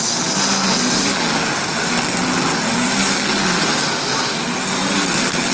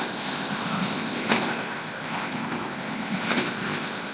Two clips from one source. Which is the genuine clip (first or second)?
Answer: first